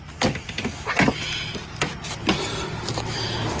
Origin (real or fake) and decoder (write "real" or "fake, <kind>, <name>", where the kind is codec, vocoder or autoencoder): real